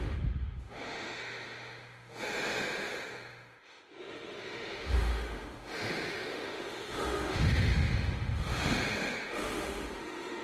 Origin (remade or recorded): remade